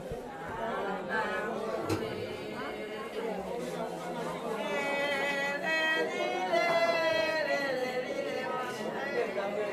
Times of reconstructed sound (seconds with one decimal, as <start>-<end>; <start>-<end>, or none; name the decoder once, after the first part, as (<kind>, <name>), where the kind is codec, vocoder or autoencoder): none